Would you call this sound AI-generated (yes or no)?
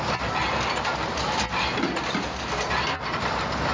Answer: no